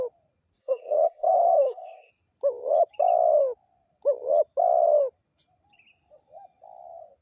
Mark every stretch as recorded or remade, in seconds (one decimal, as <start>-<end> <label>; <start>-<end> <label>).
0.0-0.6 recorded; 0.6-2.1 remade; 2.1-7.2 recorded